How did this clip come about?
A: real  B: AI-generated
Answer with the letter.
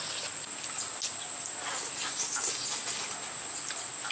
A